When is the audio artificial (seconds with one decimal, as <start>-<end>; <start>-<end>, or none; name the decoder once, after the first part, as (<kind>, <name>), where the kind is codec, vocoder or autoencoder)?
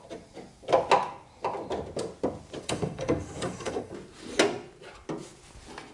2.6-3.9 (codec, SNAC)